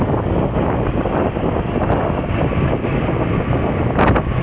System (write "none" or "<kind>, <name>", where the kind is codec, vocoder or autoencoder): none